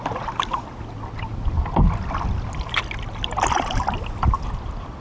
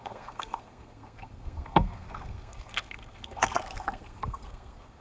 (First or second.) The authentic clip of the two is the first